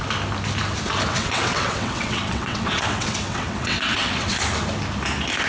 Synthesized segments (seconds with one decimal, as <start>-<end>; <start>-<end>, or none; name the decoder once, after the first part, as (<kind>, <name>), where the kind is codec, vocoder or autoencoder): 1.1-4.4 (vocoder, WaveNeXt)